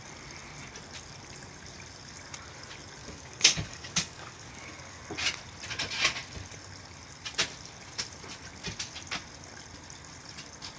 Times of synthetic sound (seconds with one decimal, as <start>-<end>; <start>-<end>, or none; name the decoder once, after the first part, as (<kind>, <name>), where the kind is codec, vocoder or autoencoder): 3.0-5.0 (codec, DAC)